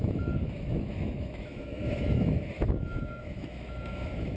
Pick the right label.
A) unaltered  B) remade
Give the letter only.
B